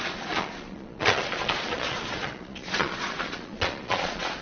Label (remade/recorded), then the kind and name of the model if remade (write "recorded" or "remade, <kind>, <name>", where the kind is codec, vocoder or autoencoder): remade, vocoder, Vocos